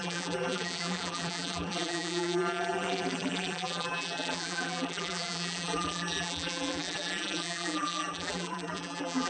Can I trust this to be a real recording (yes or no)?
no